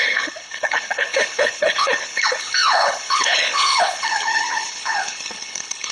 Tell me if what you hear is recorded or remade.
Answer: remade